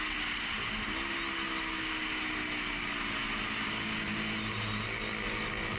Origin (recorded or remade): recorded